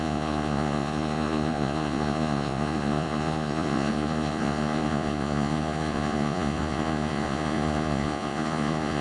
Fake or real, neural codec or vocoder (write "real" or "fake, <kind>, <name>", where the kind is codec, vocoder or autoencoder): fake, vocoder, Vocos